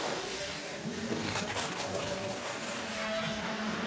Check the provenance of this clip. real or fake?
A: fake